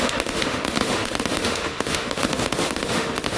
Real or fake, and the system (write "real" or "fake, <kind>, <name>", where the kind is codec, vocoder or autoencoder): fake, autoencoder, DAC-VAE